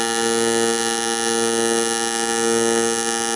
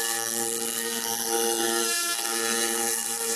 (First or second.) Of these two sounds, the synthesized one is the second